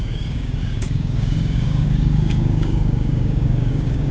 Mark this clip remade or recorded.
remade